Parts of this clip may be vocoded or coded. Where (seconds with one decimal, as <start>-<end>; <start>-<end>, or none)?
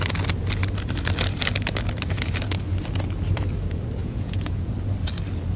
4.0-4.7